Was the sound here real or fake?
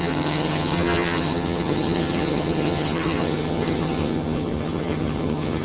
fake